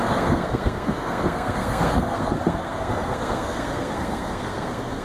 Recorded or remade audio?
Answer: remade